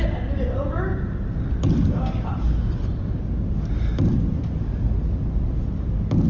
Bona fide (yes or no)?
yes